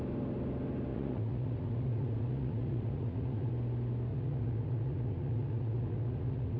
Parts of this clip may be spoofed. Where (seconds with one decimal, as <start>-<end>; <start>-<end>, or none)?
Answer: 0.9-3.5; 4.1-6.6

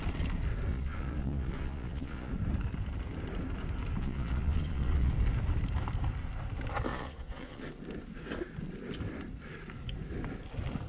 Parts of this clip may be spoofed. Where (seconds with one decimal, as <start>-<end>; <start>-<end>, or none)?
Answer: 0.7-2.3; 4.0-5.1; 6.9-7.6